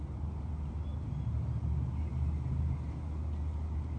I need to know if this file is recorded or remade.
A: recorded